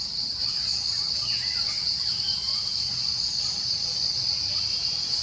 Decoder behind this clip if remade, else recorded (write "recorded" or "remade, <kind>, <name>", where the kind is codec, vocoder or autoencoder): recorded